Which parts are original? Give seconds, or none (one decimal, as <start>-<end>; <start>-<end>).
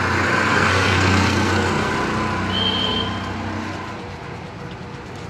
0.0-0.5; 1.9-5.3